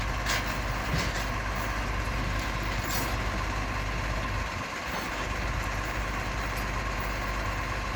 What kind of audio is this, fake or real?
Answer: real